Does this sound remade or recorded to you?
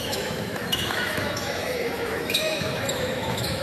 remade